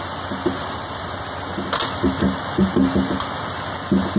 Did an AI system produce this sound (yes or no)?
no